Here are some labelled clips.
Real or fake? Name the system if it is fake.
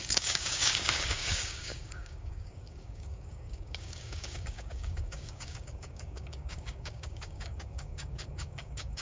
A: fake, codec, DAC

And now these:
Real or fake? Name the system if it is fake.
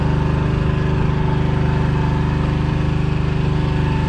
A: real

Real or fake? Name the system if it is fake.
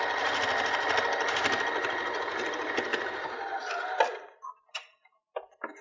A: real